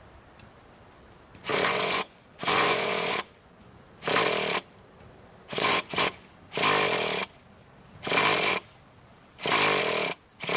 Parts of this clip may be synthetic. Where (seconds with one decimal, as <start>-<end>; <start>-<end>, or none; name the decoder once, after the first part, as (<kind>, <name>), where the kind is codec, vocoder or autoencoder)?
1.5-3.9 (vocoder, Vocos); 5.4-6.3